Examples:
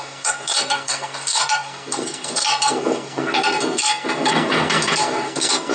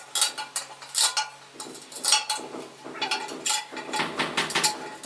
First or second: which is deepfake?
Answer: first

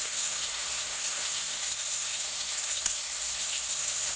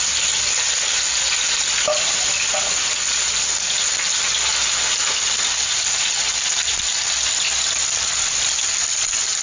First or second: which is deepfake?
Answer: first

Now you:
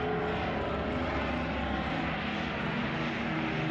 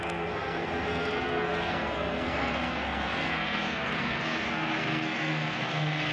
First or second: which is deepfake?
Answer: second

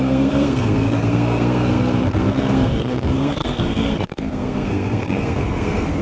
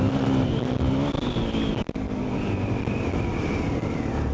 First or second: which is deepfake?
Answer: first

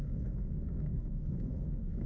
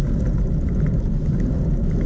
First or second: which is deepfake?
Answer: first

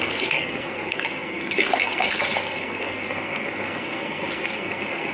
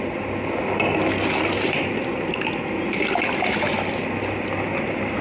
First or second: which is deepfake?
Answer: first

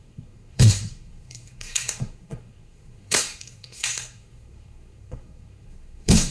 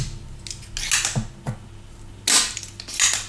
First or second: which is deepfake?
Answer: first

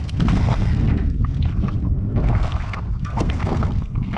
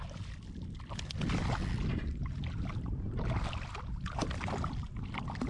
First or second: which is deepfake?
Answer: first